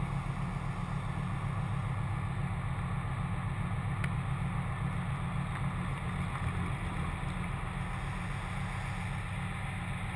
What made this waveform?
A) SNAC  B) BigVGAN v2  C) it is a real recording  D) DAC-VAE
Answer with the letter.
C